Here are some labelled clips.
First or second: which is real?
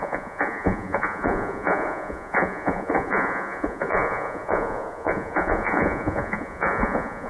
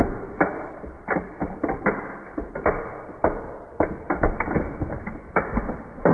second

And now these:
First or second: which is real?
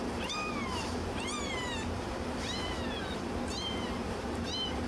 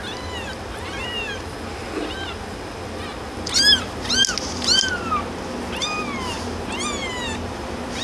second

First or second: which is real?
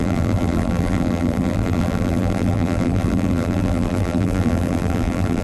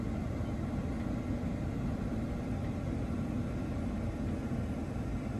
second